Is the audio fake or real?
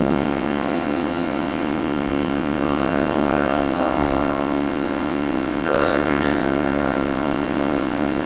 fake